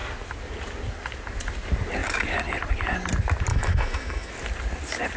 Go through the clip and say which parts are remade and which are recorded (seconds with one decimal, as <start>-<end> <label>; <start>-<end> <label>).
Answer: 0.0-3.5 recorded; 3.5-4.3 remade; 4.3-5.2 recorded